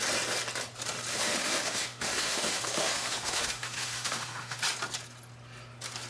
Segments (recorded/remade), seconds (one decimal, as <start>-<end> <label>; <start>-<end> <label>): 0.0-1.1 recorded; 1.1-4.6 remade; 4.6-6.1 recorded